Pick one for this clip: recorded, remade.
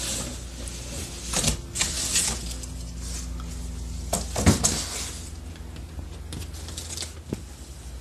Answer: recorded